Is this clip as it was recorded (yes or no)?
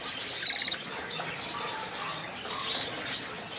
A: yes